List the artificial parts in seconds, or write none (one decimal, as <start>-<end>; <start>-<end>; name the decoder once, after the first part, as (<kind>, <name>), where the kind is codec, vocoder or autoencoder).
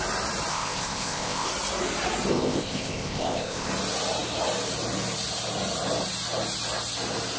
0.5-1.5 (codec, ZipCodec); 2.3-3.7